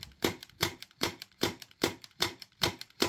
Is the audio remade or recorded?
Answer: remade